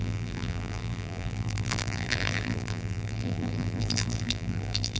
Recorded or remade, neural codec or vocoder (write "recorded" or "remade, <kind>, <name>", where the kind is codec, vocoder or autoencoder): remade, vocoder, BigVGAN v2